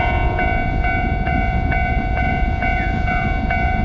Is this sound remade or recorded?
remade